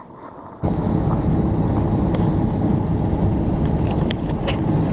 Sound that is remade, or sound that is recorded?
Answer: recorded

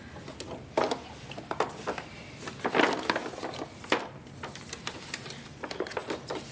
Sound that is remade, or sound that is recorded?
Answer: remade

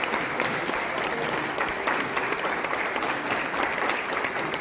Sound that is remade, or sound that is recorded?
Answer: remade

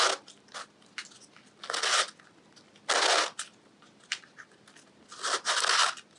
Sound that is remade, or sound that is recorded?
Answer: recorded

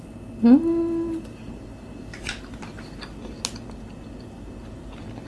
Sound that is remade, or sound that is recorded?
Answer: recorded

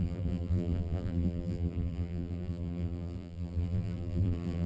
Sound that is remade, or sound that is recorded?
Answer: remade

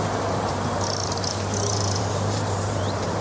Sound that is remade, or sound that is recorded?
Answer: remade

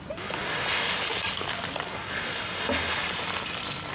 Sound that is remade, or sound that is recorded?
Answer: recorded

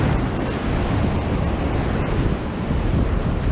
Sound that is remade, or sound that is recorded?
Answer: recorded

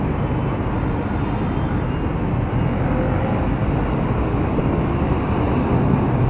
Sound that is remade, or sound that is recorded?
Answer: recorded